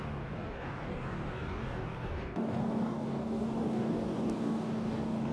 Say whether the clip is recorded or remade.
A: remade